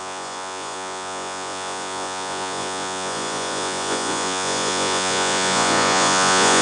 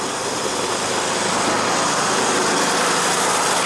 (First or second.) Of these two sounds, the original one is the second